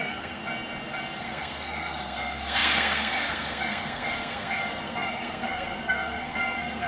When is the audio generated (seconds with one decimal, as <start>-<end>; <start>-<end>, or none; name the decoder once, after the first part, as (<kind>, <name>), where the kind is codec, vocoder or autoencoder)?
0.0-0.4 (codec, SNAC); 1.2-6.9